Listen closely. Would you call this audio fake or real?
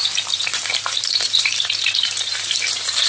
fake